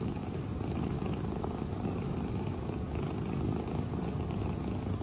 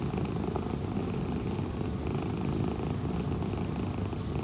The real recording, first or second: second